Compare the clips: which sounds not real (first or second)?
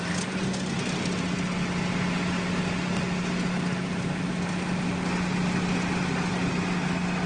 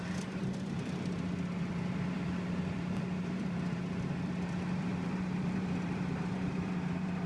second